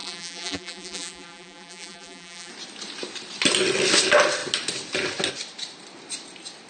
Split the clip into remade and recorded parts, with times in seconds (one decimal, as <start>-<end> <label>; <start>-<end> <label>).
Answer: 0.0-2.5 remade; 2.5-6.7 recorded